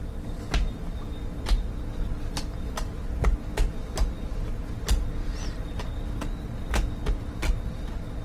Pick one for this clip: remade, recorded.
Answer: recorded